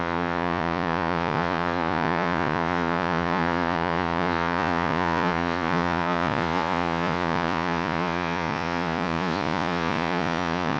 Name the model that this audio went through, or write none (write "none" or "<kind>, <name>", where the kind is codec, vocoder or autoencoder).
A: vocoder, Vocos